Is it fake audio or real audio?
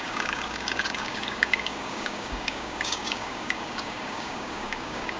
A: fake